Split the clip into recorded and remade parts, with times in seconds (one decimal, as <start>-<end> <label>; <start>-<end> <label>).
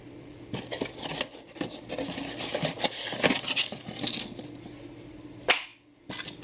0.0-6.4 recorded